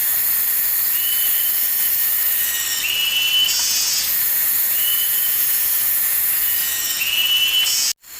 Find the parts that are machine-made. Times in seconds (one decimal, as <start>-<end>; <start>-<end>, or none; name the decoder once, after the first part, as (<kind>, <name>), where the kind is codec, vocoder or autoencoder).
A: 3.6-7.2 (vocoder, Vocos)